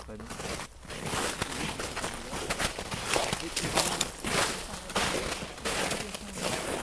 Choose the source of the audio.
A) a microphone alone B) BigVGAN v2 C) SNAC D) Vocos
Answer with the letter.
A